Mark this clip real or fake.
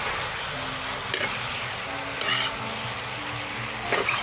real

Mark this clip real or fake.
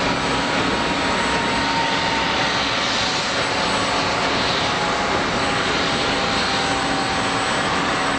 real